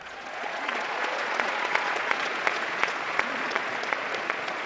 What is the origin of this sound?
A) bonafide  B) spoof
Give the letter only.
B